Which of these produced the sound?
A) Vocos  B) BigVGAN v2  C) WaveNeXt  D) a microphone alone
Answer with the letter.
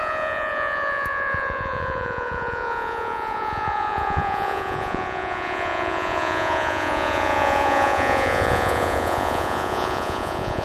A